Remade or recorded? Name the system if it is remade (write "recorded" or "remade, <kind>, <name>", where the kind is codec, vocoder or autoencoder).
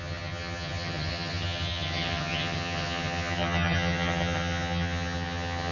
remade, vocoder, HiFi-GAN